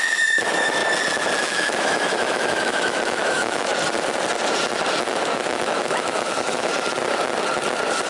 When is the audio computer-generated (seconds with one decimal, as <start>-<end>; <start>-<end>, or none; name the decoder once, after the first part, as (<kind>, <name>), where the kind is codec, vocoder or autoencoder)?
0.0-0.8 (autoencoder, DAC-VAE); 1.4-3.7; 5.1-6.7